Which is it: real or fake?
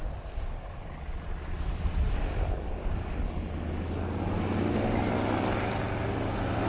real